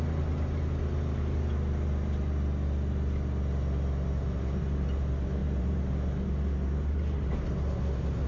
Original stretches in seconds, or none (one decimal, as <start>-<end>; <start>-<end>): 0.0-5.4; 5.9-8.3